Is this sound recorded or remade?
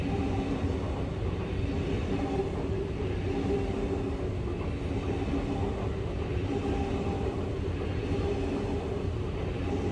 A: recorded